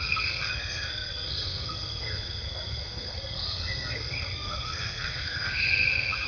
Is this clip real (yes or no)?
no